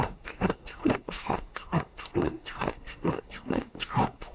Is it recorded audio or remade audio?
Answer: remade